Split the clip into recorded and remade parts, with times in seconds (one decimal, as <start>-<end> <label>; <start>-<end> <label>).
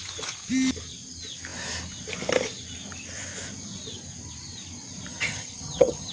0.0-5.1 recorded; 5.1-6.1 remade